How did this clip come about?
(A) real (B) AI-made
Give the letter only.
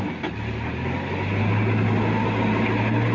A